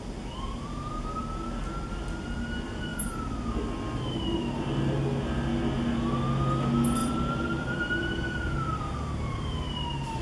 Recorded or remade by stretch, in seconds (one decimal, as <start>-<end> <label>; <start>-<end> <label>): 0.0-7.0 recorded; 7.0-8.8 remade; 8.8-10.2 recorded